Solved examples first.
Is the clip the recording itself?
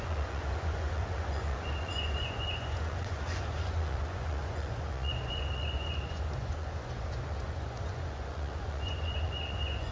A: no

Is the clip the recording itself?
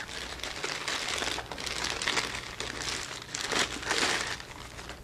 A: yes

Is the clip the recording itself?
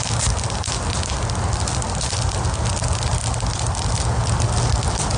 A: yes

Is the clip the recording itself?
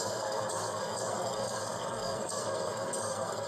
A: no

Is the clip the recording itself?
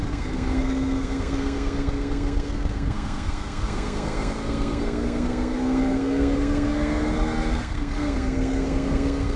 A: no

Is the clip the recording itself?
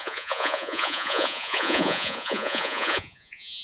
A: no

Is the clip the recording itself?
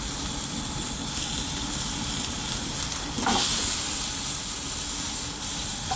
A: no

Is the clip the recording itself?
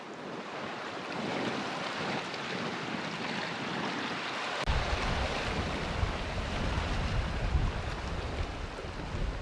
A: yes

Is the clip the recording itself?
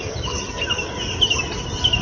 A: yes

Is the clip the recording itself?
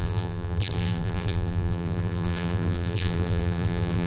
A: no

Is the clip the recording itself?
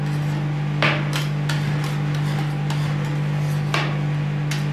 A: yes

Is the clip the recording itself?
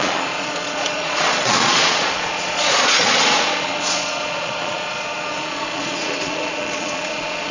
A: no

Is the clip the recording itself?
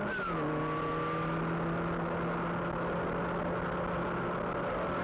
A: yes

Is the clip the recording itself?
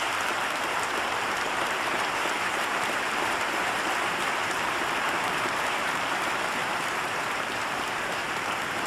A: no